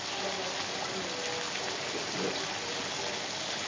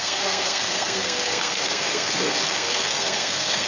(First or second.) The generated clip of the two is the second